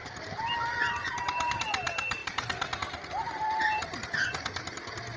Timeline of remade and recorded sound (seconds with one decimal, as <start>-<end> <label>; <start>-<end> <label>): 0.0-1.6 remade; 1.6-5.2 recorded